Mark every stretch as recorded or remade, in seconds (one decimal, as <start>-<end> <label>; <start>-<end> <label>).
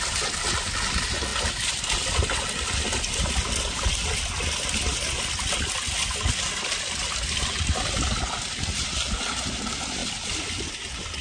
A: 0.0-11.2 recorded